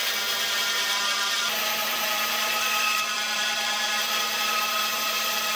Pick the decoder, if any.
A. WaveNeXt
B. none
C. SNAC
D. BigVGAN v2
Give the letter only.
D